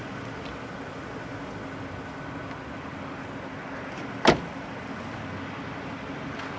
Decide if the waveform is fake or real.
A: real